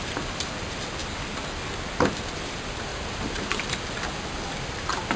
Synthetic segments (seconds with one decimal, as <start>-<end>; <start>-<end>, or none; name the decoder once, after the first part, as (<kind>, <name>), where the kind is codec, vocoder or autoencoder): 2.9-3.6 (vocoder, BigVGAN v2)